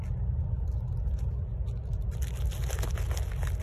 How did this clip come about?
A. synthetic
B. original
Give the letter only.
B